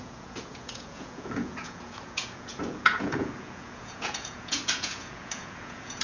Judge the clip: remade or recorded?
remade